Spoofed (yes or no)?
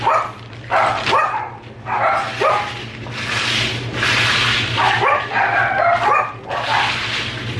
no